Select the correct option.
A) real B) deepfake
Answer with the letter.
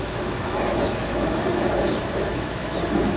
B